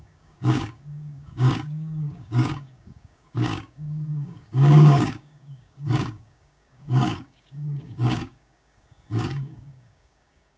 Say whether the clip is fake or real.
fake